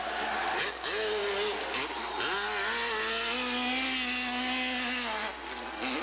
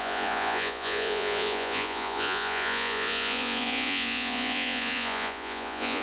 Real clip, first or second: first